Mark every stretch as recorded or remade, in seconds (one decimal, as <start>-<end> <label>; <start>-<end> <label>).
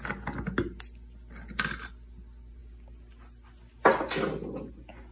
0.0-5.1 recorded